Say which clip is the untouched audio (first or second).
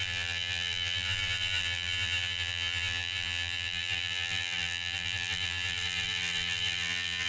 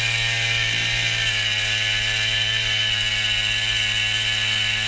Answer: second